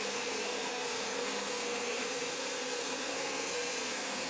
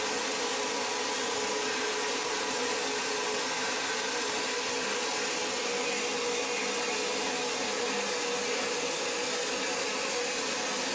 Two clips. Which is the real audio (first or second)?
second